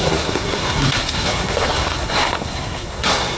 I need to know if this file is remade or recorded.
remade